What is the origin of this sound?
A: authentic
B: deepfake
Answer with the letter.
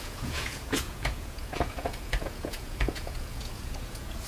B